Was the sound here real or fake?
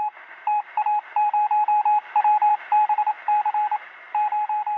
fake